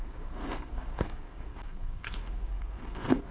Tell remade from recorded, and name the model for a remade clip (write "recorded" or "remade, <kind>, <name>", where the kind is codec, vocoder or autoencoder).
remade, codec, SNAC